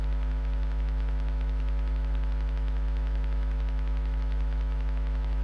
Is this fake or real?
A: fake